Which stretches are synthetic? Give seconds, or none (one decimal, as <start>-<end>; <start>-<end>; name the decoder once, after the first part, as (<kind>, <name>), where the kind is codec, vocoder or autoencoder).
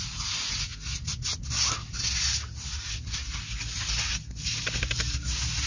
none